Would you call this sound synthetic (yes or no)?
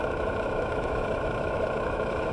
yes